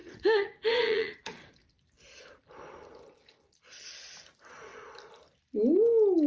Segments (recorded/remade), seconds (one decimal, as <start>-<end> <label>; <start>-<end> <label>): 0.0-1.5 remade; 1.5-6.3 recorded